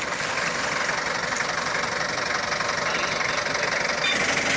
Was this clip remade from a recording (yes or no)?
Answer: no